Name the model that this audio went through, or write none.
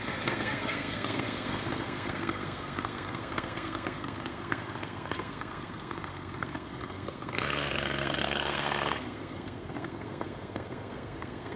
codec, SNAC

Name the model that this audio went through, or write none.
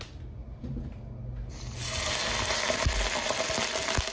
none